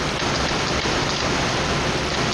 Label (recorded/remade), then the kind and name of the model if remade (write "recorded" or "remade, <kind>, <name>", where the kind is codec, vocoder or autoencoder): recorded